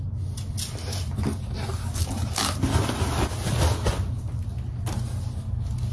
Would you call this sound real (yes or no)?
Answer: yes